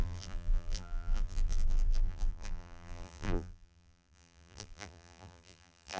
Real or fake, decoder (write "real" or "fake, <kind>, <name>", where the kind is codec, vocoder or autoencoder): fake, vocoder, BigVGAN v2